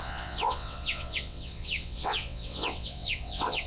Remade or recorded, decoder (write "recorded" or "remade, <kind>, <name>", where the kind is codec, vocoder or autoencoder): remade, vocoder, WaveNeXt